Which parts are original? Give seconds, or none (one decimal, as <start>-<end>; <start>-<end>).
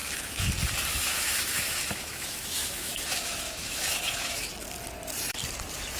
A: 0.5-0.9; 4.5-6.0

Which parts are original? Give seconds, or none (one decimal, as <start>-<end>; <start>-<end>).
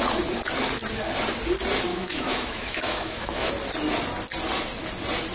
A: 0.0-1.9; 3.5-5.3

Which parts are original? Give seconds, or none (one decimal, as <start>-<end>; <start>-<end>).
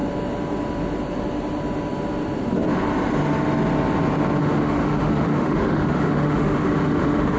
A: 0.0-4.4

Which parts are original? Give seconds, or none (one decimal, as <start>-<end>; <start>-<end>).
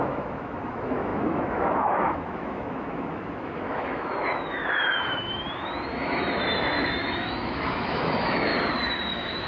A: 8.5-9.1